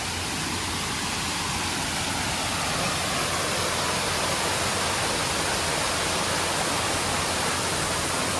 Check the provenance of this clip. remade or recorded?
recorded